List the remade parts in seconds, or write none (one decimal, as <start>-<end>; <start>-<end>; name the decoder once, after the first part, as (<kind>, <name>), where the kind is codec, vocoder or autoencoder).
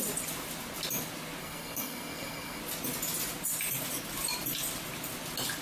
1.4-2.6 (codec, SNAC)